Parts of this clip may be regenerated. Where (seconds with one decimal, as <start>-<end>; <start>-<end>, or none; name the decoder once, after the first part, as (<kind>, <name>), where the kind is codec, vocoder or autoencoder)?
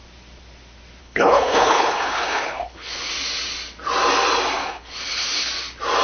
1.0-3.1 (codec, HILCodec); 4.6-5.5